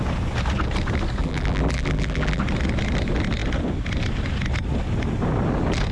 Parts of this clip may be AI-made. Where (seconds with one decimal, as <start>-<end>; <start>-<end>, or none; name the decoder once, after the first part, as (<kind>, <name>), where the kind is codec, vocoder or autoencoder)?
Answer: 1.2-2.4 (vocoder, BigVGAN v2)